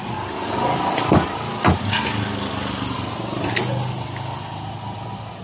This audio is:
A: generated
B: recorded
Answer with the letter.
B